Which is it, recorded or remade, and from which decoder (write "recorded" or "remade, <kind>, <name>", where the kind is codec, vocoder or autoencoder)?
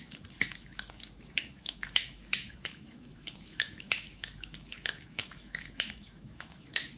remade, autoencoder, DAC-VAE